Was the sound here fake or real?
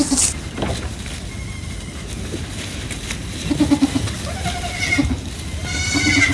real